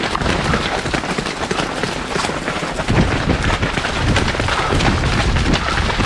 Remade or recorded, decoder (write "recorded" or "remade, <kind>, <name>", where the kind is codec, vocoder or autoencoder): recorded